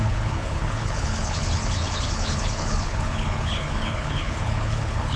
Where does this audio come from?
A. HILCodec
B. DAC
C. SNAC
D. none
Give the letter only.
A